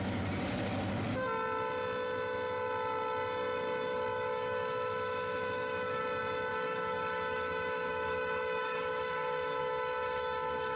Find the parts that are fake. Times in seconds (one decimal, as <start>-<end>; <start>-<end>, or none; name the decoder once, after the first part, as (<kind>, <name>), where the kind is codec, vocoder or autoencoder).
4.1-6.0 (autoencoder, DAC-VAE); 6.5-10.8